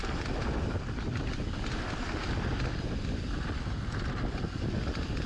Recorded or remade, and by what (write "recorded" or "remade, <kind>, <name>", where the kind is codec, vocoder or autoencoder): recorded